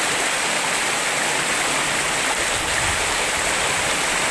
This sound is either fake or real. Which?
real